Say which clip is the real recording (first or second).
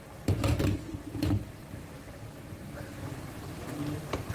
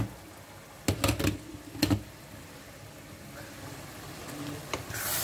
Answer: second